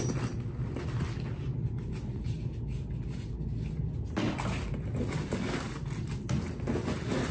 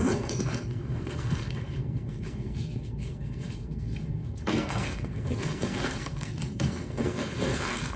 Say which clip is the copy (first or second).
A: second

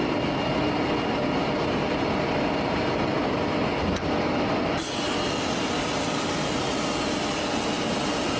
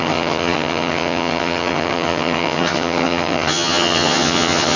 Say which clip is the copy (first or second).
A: second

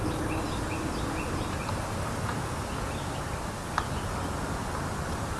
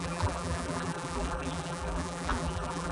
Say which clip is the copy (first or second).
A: second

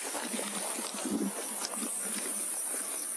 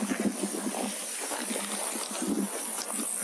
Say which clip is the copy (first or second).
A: first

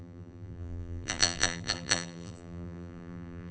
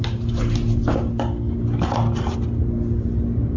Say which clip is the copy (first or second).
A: first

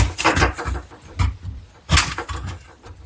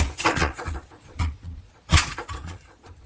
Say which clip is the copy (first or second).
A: second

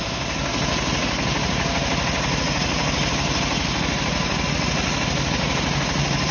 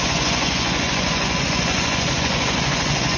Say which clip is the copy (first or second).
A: second